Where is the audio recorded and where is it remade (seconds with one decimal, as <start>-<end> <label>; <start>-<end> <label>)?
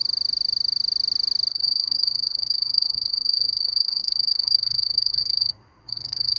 0.0-1.5 recorded; 1.5-6.4 remade